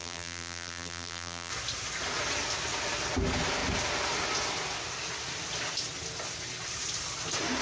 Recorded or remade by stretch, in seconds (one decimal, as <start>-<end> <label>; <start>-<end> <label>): 0.0-1.5 remade; 1.5-7.6 recorded